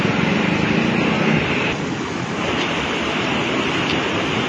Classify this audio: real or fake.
real